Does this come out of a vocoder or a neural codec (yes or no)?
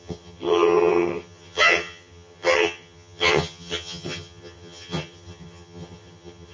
yes